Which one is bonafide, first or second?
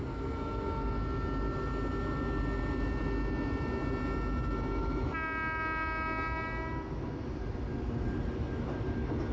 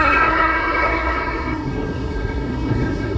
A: first